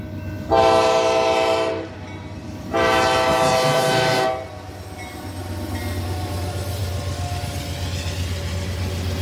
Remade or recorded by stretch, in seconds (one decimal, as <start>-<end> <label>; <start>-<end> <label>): 0.0-1.7 recorded; 1.7-2.5 remade; 2.5-3.3 recorded; 3.3-3.8 remade; 3.8-9.2 recorded